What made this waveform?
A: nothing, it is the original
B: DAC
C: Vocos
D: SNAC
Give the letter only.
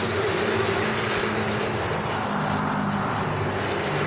A